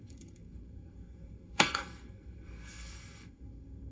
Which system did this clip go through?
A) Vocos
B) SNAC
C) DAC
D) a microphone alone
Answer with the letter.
B